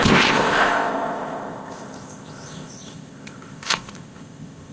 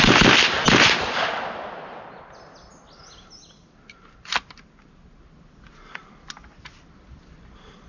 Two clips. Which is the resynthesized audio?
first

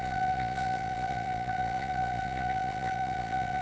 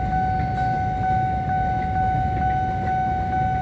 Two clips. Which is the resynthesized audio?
first